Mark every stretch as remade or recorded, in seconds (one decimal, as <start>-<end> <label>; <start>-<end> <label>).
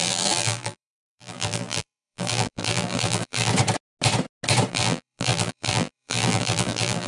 0.0-3.5 remade; 3.5-4.7 recorded; 4.7-7.1 remade